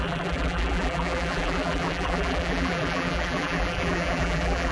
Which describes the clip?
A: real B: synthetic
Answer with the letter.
B